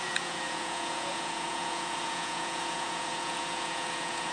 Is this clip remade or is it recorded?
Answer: remade